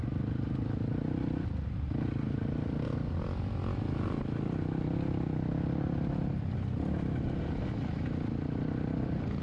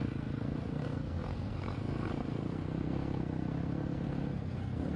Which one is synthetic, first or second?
second